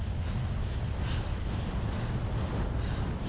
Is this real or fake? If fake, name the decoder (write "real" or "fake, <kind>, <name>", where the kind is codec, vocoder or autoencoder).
real